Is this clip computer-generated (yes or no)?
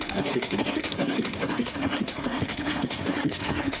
yes